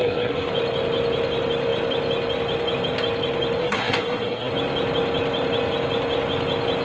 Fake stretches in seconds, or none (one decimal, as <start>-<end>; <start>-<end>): 0.0-0.5; 3.6-4.5